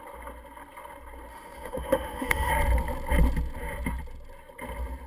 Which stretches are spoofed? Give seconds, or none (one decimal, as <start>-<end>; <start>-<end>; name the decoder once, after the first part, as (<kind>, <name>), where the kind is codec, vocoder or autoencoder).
1.3-2.5 (autoencoder, DAC-VAE)